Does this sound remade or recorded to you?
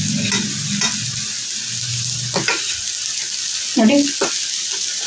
recorded